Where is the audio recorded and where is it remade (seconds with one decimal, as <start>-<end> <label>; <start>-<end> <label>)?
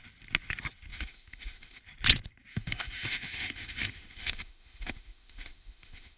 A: 0.0-0.9 recorded; 0.9-1.8 remade; 1.8-2.5 recorded; 2.5-6.2 remade